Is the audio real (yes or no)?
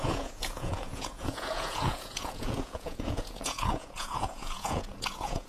no